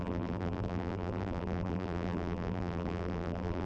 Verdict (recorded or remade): remade